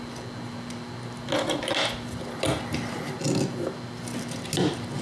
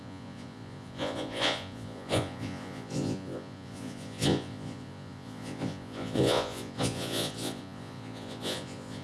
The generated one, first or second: second